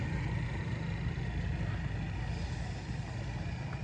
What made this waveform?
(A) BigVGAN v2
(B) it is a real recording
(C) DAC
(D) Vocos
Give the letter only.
B